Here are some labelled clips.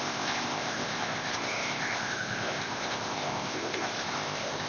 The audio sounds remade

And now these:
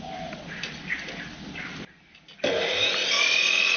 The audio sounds recorded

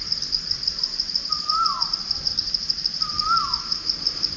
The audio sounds recorded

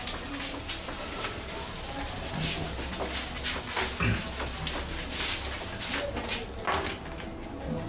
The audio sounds recorded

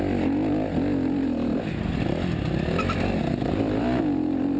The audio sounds recorded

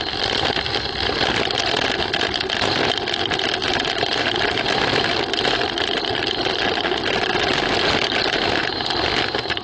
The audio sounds recorded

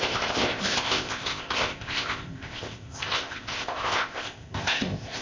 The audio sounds remade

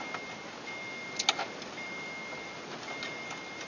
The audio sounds recorded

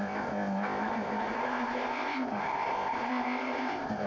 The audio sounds remade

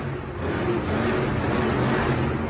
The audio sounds recorded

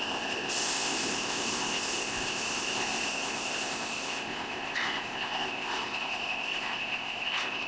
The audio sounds remade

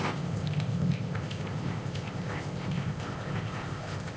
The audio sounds remade